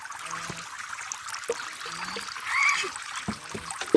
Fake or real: real